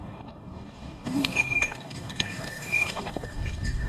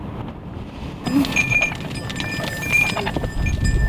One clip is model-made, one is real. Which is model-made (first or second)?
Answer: first